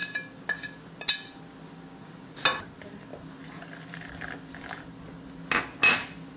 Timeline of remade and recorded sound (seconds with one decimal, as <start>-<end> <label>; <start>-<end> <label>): 0.0-6.4 recorded